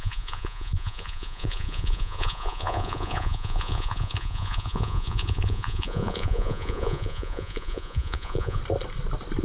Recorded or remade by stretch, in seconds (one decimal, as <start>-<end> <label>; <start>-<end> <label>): 0.0-8.6 remade; 8.6-9.4 recorded